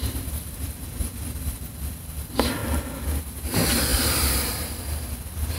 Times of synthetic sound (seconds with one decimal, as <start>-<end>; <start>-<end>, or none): 0.0-2.6; 3.2-3.9